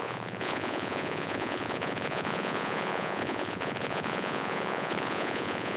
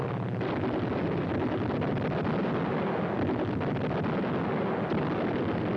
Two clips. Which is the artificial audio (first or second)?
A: first